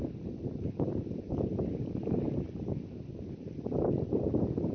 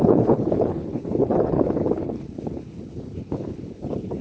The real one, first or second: first